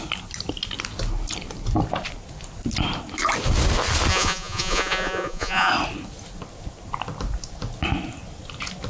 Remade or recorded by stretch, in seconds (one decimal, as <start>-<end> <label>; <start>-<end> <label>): 0.0-4.1 recorded; 4.1-5.7 remade; 5.7-8.9 recorded